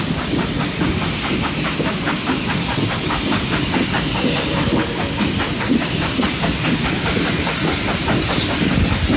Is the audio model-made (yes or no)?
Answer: yes